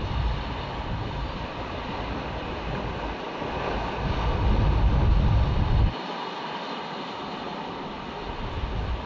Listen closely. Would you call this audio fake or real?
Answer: real